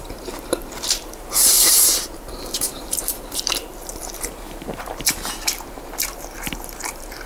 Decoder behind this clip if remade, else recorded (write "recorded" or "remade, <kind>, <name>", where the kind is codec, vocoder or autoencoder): remade, vocoder, BigVGAN v2